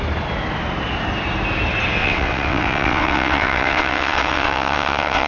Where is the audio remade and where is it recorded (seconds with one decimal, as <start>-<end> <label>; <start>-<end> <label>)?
0.0-2.0 recorded; 2.0-5.3 remade